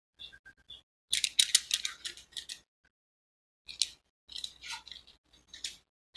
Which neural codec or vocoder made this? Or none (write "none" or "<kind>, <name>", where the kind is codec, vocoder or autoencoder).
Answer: none